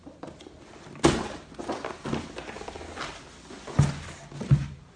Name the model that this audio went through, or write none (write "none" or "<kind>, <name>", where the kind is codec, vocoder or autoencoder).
none